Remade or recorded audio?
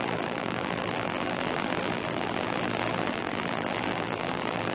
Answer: remade